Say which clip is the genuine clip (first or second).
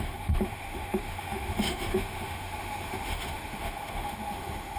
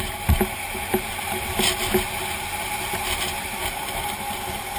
second